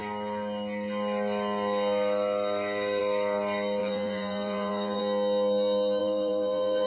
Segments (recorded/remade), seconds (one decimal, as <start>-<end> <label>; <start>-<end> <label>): 0.0-3.8 recorded; 3.8-5.0 remade; 5.0-6.0 recorded; 6.0-6.9 remade